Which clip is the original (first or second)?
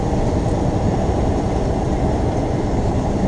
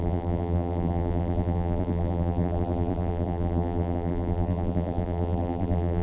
first